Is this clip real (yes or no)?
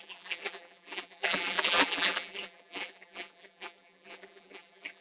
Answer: no